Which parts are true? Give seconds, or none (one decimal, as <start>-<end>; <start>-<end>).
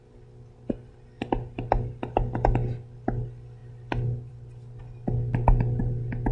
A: 0.0-6.3